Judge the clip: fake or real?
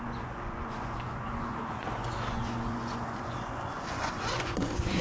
fake